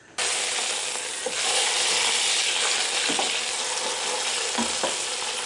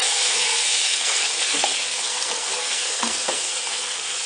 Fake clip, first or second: second